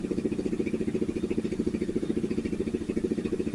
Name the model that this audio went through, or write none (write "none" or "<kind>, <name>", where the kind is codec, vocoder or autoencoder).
vocoder, BigVGAN v2